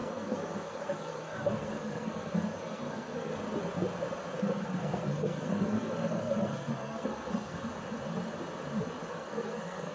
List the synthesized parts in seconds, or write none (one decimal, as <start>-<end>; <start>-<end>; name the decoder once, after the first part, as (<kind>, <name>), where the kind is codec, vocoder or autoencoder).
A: 0.0-3.3 (codec, SNAC); 4.4-7.7; 9.1-9.9